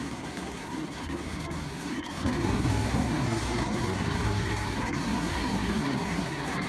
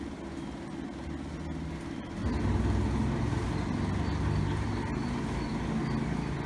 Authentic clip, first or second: second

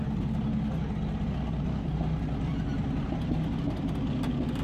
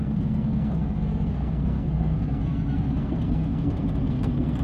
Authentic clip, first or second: first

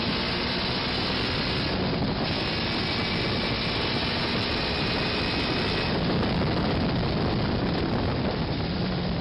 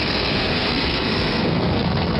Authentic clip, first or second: first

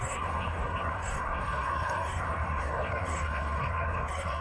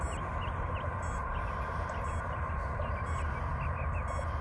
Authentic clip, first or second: second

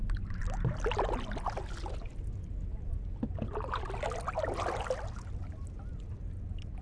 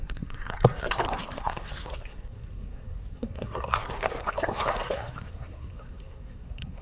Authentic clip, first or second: first